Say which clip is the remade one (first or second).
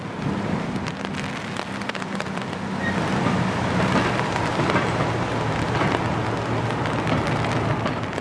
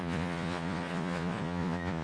second